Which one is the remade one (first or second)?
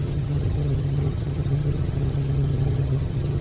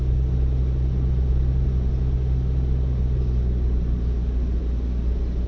first